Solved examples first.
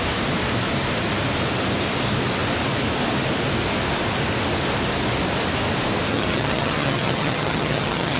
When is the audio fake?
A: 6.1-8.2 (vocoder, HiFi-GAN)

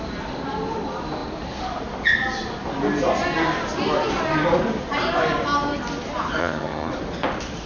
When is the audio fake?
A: 6.4-6.9 (vocoder, HiFi-GAN)

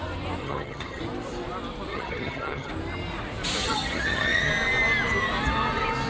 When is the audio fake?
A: 0.4-1.0 (vocoder, HiFi-GAN); 1.9-2.7; 3.6-4.5

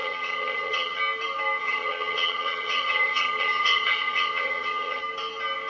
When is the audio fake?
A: 0.0-1.0 (vocoder, HiFi-GAN); 1.6-5.0